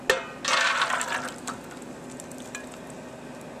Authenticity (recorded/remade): recorded